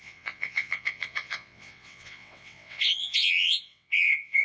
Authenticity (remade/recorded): remade